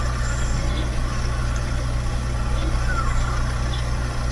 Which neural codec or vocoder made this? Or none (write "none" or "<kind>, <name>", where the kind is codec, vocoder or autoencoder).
none